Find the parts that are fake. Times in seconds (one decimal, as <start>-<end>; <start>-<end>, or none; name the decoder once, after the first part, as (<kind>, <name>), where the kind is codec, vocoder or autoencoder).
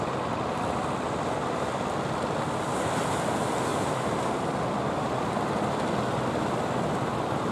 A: 3.7-4.4 (vocoder, BigVGAN v2)